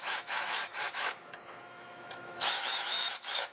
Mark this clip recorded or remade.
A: remade